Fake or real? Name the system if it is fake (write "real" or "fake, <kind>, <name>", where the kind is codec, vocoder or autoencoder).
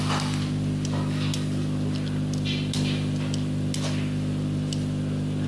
real